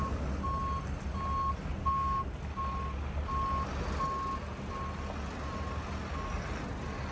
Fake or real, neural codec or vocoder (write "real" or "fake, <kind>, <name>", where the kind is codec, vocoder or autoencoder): real